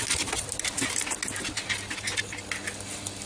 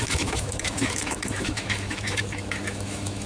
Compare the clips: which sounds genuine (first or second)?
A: first